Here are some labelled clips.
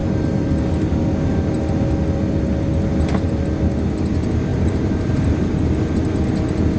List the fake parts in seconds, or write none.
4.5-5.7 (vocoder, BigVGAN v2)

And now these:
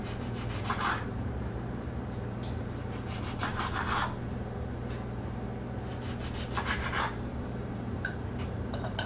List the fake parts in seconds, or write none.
0.0-3.5 (vocoder, BigVGAN v2); 6.7-9.1